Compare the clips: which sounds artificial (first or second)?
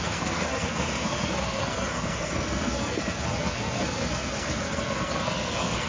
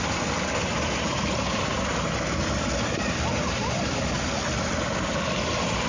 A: first